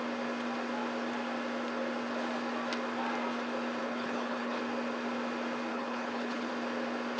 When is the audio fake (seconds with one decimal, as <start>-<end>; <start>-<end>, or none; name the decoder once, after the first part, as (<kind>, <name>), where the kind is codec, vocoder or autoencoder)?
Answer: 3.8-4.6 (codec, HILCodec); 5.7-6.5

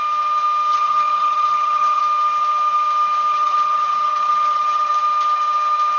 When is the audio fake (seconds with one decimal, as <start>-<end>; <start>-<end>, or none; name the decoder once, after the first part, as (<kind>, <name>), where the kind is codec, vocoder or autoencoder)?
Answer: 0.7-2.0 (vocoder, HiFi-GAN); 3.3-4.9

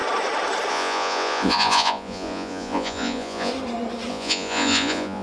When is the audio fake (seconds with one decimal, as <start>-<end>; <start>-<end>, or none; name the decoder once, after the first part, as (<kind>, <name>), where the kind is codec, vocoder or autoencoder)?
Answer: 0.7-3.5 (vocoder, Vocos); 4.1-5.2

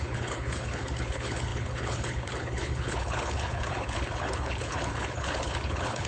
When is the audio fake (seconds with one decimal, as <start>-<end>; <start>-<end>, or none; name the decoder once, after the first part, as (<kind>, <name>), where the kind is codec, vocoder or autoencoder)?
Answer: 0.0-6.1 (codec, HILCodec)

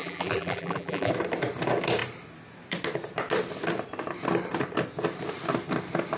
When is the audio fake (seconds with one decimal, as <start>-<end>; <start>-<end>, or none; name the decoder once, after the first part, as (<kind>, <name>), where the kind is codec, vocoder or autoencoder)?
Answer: 0.0-1.1 (vocoder, BigVGAN v2)

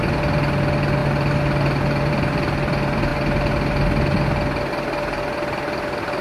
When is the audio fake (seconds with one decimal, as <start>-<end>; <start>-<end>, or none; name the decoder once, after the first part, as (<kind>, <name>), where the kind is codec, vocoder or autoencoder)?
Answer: none

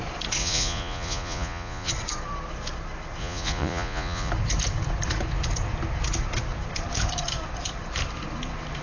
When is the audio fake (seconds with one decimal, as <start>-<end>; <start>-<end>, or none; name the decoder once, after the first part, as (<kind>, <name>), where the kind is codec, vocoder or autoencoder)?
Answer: 0.4-1.9 (vocoder, Vocos); 3.2-4.3